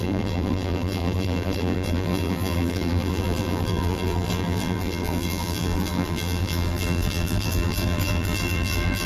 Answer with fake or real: fake